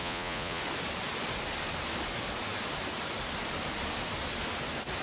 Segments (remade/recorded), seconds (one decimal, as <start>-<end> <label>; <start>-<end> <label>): 0.0-0.6 remade; 0.6-5.0 recorded